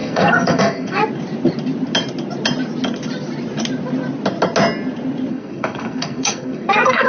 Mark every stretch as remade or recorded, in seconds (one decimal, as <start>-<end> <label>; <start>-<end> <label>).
0.0-1.0 remade; 1.0-5.3 recorded; 5.3-7.1 remade